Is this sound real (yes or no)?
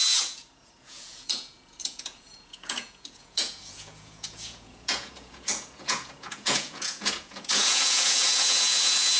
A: no